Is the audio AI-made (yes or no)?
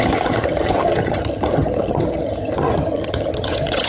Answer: yes